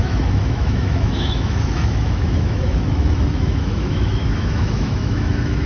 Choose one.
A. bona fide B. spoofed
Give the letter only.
B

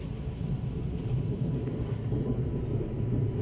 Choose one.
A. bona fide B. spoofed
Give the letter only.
A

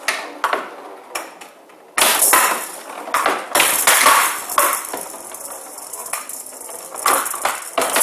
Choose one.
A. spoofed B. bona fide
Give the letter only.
B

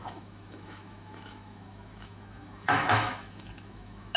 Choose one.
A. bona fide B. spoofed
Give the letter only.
B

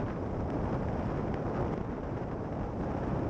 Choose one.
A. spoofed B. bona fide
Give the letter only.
B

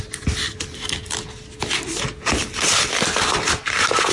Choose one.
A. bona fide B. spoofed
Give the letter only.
A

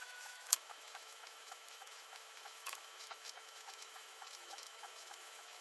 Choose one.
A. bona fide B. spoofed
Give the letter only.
B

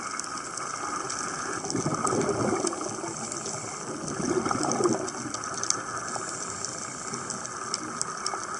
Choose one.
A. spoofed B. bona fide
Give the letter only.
B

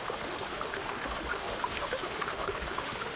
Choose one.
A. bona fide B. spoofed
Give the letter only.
B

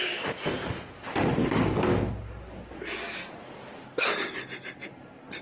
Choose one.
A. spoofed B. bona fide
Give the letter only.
B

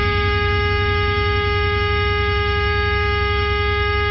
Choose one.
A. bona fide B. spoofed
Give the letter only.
B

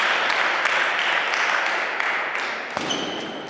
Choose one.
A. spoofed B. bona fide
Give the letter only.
B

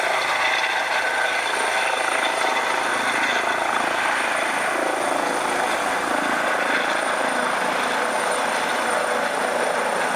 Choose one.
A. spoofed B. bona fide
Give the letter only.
B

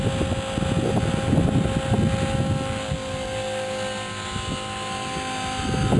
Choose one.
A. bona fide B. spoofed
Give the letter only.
A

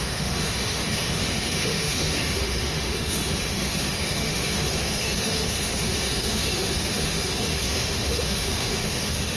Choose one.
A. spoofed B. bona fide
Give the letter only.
A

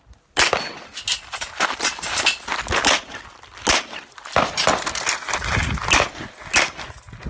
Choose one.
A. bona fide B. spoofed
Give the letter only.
A